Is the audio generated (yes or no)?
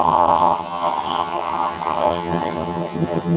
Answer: yes